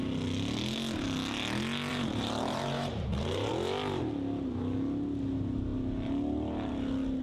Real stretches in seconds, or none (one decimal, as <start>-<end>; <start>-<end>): 0.0-1.9; 3.5-7.2